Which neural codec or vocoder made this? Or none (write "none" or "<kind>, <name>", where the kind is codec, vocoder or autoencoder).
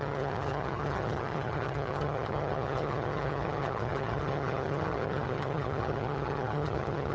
vocoder, HiFi-GAN